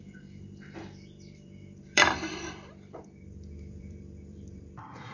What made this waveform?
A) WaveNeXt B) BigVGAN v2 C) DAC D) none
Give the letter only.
B